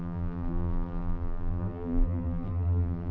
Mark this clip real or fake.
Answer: fake